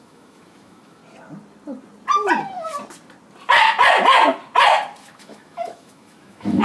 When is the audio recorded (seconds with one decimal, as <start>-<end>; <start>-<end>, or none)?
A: 1.0-5.0